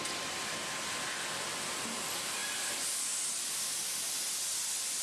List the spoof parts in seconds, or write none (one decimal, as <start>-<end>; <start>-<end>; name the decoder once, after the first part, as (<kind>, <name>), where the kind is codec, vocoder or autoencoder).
none

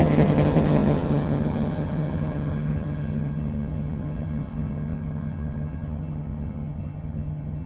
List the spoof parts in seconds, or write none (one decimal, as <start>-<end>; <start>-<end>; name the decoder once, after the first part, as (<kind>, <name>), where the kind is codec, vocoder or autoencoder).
0.0-7.7 (vocoder, HiFi-GAN)

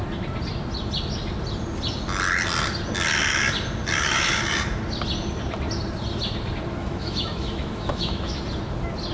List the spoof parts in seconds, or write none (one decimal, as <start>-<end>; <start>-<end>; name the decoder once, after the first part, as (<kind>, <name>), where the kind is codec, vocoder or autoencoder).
6.8-8.4 (autoencoder, DAC-VAE)

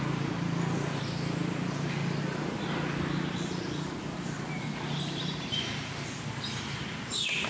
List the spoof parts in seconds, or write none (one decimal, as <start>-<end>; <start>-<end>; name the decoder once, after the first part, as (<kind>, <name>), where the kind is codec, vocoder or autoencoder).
none

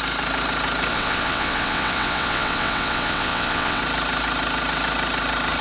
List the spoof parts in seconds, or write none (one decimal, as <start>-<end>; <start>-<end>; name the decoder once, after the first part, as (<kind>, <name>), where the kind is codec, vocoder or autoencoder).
0.9-3.8 (vocoder, WaveNeXt)

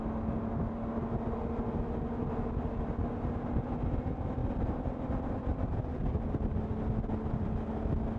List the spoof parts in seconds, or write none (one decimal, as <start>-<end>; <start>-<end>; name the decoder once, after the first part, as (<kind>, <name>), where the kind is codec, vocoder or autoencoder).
none

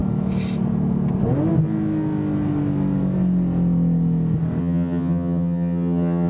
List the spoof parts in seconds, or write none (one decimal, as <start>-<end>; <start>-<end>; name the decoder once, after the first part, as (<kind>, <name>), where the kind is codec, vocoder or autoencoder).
4.6-6.3 (vocoder, HiFi-GAN)

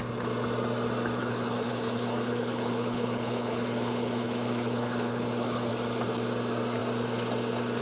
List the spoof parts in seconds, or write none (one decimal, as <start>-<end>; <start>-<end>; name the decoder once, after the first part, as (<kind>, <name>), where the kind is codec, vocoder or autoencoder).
1.2-5.7 (codec, HILCodec)